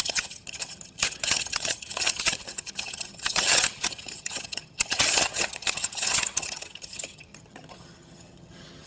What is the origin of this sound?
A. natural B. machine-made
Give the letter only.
B